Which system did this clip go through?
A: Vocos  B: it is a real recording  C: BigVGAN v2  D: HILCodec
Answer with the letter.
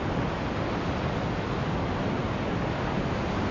B